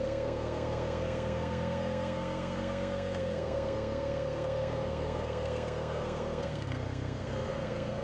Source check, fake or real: fake